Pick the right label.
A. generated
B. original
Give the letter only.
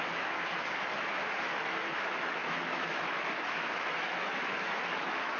A